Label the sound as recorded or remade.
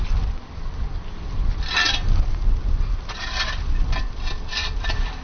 recorded